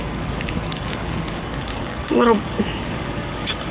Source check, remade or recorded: remade